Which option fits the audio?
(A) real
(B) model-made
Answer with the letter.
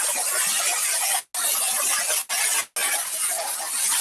A